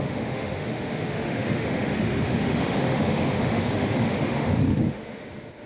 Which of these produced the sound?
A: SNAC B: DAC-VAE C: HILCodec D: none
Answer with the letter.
B